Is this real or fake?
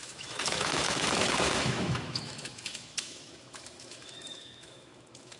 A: fake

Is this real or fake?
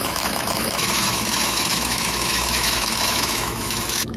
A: fake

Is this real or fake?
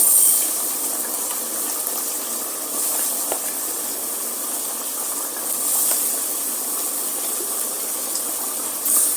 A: real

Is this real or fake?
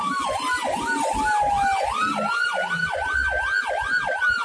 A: real